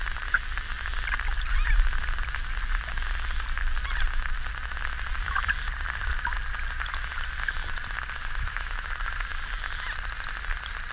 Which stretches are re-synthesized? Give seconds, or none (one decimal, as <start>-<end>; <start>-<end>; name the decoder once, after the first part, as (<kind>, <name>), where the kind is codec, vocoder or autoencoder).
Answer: 8.2-8.9 (autoencoder, DAC-VAE)